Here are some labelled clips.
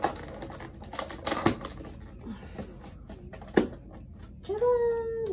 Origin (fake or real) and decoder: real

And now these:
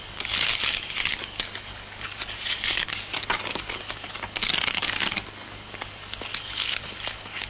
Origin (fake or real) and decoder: fake, codec, DAC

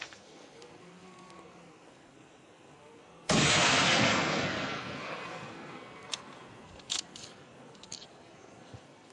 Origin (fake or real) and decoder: fake, codec, SNAC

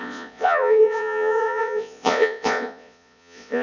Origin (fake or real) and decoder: fake, vocoder, Vocos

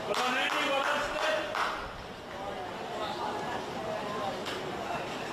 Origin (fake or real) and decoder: real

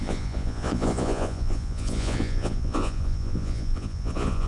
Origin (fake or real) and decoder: fake, vocoder, Vocos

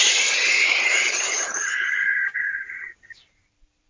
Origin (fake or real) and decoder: fake, vocoder, BigVGAN v2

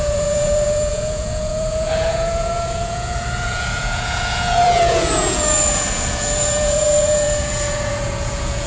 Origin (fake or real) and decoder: fake, vocoder, Vocos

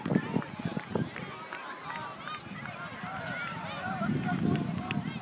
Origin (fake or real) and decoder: real